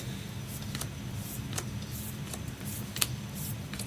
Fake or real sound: real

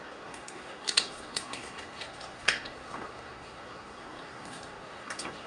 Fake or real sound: fake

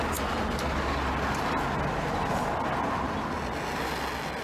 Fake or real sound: real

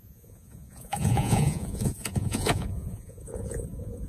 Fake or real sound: fake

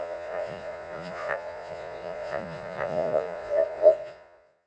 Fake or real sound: fake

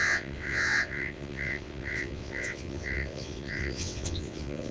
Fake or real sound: fake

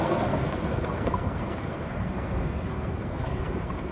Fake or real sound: fake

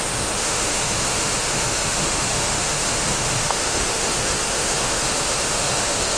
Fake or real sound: fake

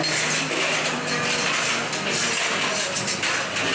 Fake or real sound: real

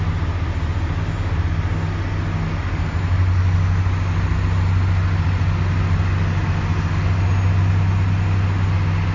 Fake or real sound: real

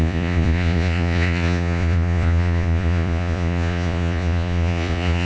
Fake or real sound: fake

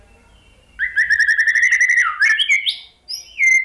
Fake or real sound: real